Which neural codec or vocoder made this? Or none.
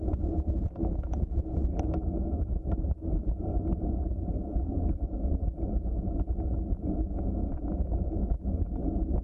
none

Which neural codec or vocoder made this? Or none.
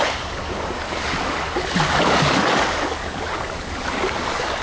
codec, DAC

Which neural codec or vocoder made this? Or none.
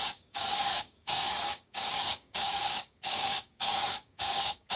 codec, DAC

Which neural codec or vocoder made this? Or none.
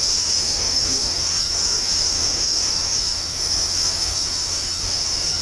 codec, DAC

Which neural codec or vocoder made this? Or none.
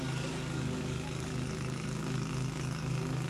codec, DAC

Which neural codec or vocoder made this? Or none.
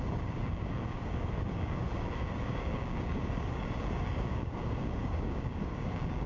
codec, DAC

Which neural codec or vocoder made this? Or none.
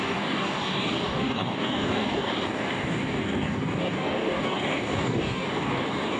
codec, DAC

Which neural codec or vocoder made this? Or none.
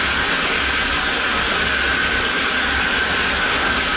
none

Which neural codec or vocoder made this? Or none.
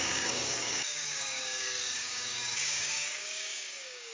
codec, DAC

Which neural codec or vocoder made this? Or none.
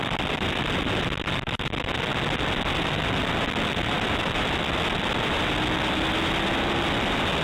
none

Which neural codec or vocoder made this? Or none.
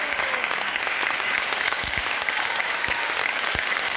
codec, DAC